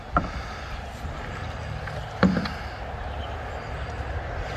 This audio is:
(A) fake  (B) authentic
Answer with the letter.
B